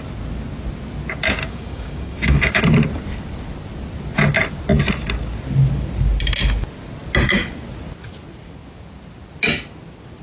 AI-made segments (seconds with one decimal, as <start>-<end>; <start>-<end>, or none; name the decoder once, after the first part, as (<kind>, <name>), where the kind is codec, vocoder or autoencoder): 1.4-2.6 (codec, DAC)

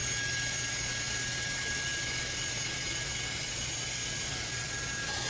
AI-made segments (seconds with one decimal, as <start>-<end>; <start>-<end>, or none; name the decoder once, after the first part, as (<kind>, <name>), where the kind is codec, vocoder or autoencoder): 1.9-3.0 (vocoder, BigVGAN v2); 4.0-4.8

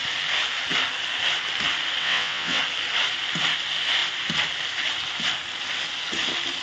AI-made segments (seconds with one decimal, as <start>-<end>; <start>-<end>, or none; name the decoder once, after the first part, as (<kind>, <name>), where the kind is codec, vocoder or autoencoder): 2.0-2.6 (vocoder, WaveNeXt)

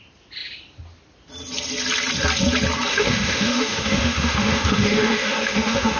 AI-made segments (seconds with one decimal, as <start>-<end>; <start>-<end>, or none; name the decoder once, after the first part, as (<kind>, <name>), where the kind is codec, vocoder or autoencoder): 2.9-6.0 (autoencoder, DAC-VAE)

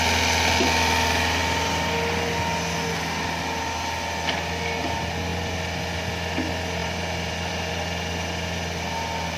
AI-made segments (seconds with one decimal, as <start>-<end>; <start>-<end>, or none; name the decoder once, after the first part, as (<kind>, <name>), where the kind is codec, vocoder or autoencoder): 6.8-7.5 (vocoder, BigVGAN v2)

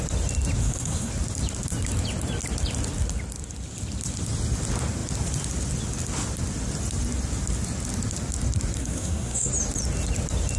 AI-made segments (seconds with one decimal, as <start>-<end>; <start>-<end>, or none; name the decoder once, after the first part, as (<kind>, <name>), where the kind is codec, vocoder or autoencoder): 0.6-1.1 (codec, SNAC); 8.8-9.5